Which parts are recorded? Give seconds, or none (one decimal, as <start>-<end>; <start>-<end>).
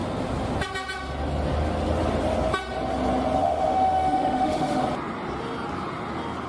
0.0-3.4; 4.8-6.5